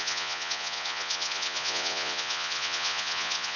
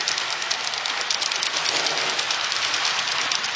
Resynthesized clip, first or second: first